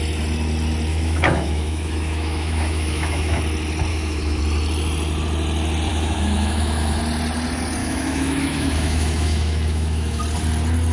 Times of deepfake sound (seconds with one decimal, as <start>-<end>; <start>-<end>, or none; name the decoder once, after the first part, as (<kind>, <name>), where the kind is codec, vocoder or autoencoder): 0.9-3.4 (autoencoder, DAC-VAE); 3.9-4.4; 5.9-7.0; 7.8-10.2